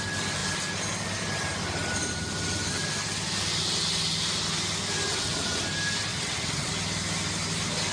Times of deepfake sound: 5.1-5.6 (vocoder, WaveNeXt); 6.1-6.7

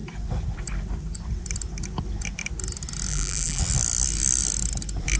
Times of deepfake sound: 3.1-3.6 (vocoder, BigVGAN v2)

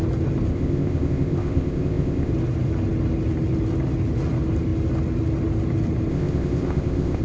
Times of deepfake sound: 0.5-2.3 (codec, ZipCodec); 6.1-7.2